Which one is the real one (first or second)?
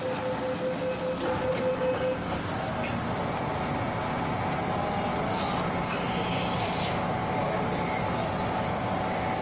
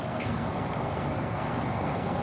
first